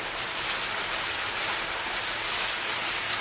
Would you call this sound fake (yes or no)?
no